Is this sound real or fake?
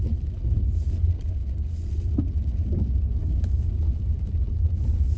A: real